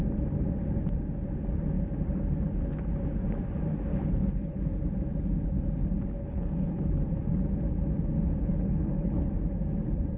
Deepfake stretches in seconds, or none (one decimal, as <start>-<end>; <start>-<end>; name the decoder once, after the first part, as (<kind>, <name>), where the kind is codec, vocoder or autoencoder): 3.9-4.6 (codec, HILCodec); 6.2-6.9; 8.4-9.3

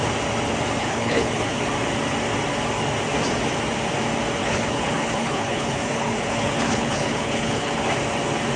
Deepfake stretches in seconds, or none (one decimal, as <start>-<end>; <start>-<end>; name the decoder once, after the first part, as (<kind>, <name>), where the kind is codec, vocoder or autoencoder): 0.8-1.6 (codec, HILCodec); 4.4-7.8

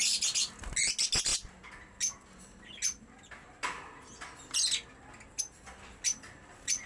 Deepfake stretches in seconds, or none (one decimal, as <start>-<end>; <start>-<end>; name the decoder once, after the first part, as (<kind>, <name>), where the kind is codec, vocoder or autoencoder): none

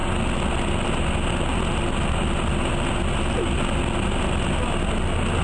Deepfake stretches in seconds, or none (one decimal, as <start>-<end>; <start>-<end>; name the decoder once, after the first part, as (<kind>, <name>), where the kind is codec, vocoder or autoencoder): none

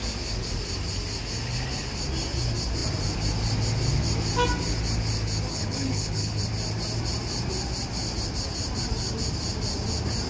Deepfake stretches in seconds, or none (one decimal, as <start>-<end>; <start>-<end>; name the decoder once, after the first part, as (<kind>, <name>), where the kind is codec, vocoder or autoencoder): 5.5-6.4 (codec, HILCodec)